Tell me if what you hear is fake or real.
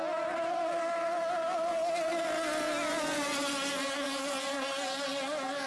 real